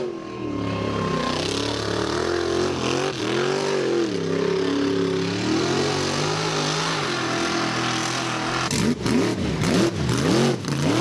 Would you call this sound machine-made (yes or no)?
no